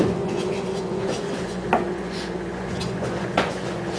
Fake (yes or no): yes